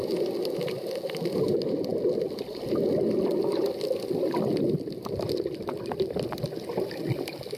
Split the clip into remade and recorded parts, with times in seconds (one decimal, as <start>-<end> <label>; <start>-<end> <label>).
0.0-7.6 recorded